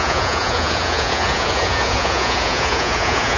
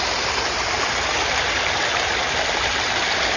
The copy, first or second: first